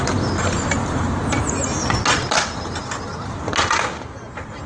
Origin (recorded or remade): recorded